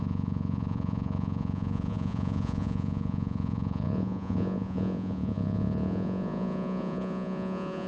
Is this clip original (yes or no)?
no